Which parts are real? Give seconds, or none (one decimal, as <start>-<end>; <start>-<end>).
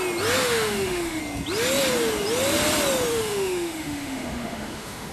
0.0-0.4; 1.2-3.1